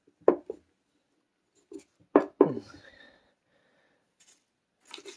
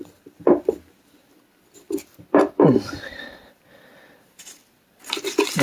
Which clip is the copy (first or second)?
second